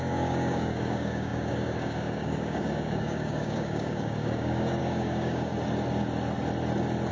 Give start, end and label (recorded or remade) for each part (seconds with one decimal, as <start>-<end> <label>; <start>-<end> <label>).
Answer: 0.0-5.5 remade; 5.5-7.1 recorded